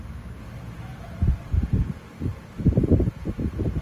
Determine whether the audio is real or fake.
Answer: fake